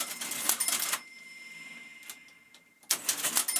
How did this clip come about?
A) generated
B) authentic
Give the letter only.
B